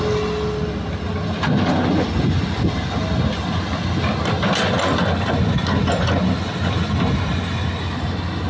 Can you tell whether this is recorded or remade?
recorded